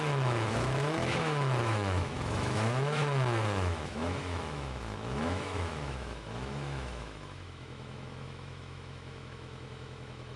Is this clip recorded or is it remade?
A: remade